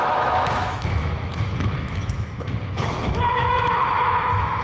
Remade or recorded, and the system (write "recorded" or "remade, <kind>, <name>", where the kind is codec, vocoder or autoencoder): remade, autoencoder, DAC-VAE